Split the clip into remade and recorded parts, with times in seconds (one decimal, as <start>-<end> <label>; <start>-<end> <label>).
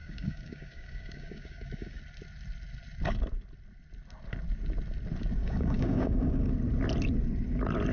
0.0-2.0 remade; 2.0-5.4 recorded; 5.4-6.5 remade; 6.5-7.9 recorded